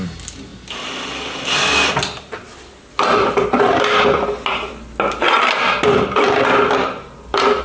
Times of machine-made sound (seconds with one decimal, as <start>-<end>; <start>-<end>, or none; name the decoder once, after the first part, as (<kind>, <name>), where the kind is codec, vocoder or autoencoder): none